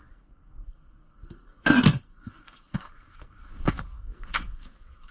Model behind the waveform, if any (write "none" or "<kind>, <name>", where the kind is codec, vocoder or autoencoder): codec, SNAC